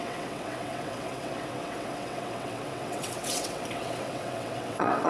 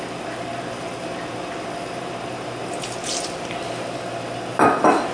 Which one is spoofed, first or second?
first